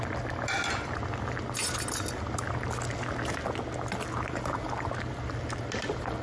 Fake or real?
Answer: real